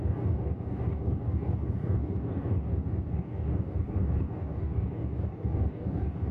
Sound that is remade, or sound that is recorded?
remade